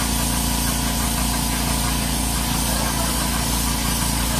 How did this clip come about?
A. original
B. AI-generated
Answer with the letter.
A